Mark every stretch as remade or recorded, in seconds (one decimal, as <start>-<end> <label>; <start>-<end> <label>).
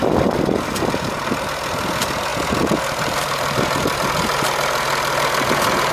0.0-5.9 recorded